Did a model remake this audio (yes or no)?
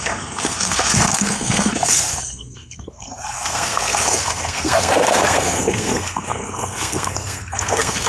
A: yes